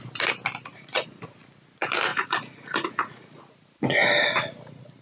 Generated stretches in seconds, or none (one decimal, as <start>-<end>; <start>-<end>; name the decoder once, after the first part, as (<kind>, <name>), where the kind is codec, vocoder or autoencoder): 0.7-1.2 (vocoder, Vocos); 2.1-3.4